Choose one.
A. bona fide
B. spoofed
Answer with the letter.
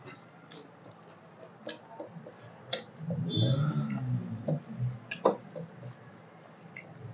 A